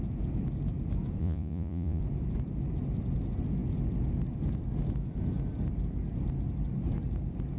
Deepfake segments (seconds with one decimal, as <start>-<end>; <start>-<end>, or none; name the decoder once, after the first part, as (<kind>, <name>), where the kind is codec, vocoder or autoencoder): 1.2-2.0 (vocoder, Vocos)